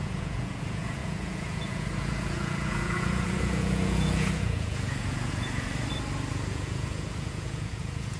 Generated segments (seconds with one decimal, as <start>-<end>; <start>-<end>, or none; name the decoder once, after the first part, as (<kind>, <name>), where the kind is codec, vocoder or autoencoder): 0.0-5.7 (vocoder, Vocos); 6.3-8.2